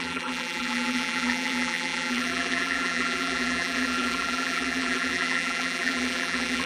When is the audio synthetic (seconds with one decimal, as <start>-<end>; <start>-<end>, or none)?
0.0-6.7